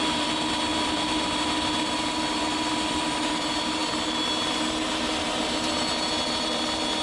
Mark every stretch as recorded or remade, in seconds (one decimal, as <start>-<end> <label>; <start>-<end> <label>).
0.0-7.0 recorded